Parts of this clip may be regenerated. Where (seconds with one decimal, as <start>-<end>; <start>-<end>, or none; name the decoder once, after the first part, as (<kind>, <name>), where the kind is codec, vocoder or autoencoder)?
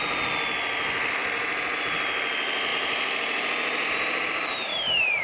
1.2-1.8 (vocoder, BigVGAN v2); 2.7-5.2